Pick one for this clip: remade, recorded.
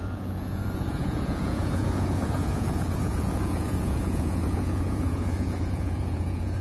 remade